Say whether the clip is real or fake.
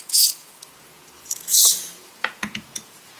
fake